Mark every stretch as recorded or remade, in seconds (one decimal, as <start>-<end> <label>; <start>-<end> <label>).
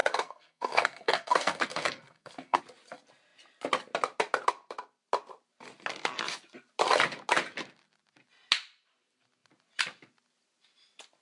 0.0-2.6 remade; 2.6-11.2 recorded